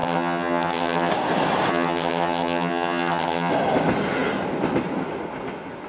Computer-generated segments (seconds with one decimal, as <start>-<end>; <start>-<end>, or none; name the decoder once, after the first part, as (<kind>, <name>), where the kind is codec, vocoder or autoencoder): 0.0-1.1 (vocoder, HiFi-GAN); 1.7-3.5